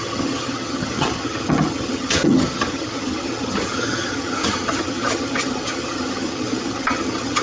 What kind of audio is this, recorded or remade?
remade